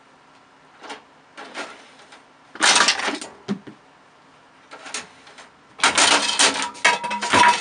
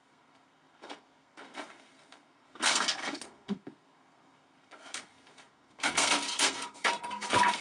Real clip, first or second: first